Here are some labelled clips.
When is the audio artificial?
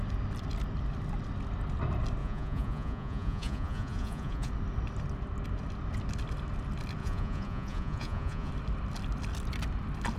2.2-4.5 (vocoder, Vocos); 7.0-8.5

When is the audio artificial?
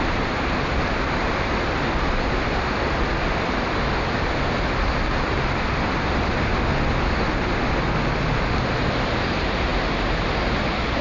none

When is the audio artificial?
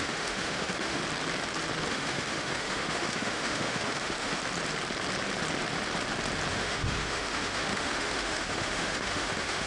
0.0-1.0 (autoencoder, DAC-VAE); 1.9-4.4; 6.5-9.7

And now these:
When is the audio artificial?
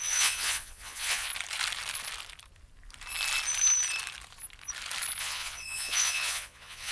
0.0-1.3 (vocoder, Vocos); 5.2-6.9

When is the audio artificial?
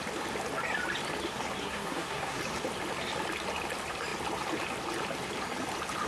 1.6-2.4 (codec, SNAC)